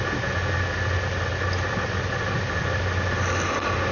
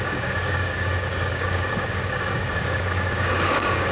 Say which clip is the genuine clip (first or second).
first